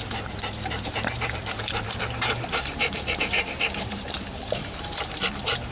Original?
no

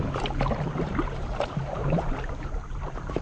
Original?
no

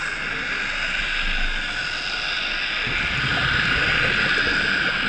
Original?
yes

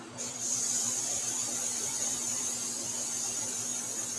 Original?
no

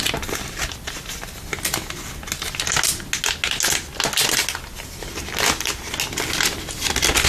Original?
yes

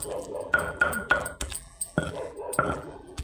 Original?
no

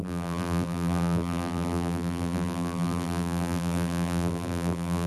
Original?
no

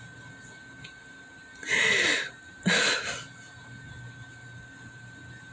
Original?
yes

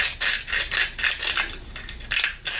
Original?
yes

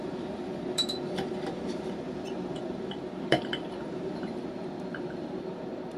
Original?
no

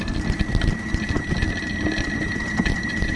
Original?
yes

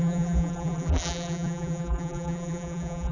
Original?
no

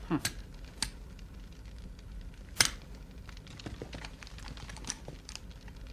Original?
yes